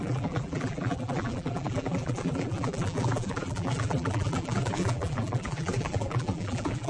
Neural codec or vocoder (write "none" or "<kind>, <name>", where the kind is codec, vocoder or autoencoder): vocoder, BigVGAN v2